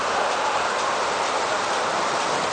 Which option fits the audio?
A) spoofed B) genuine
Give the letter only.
B